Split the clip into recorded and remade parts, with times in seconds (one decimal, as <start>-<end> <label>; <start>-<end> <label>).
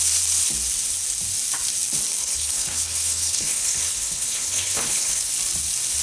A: 0.0-2.2 recorded; 2.2-5.3 remade; 5.3-6.0 recorded